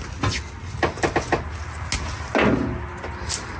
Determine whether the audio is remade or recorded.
recorded